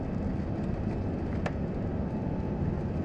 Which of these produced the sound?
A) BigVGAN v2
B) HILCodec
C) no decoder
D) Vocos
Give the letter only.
C